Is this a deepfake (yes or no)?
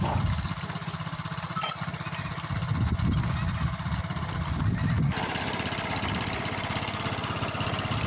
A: no